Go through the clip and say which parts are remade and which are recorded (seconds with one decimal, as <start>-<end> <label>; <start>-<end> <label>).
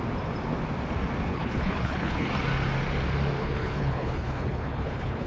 0.0-1.3 recorded; 1.3-2.3 remade; 2.3-3.4 recorded; 3.4-5.3 remade